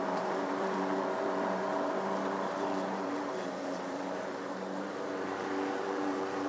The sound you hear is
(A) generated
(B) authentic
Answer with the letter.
A